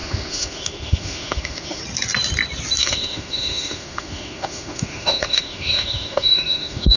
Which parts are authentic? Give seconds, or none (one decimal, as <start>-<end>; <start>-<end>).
1.8-2.8